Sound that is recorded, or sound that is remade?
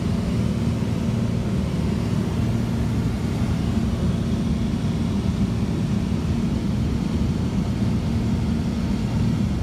recorded